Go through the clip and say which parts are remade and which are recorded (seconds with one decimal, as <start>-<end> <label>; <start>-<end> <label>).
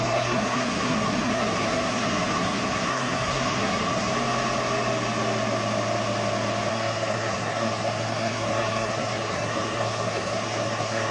0.0-4.1 remade; 4.1-6.7 recorded; 6.7-11.1 remade